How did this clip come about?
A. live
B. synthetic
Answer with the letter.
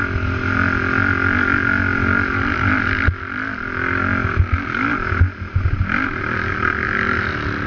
A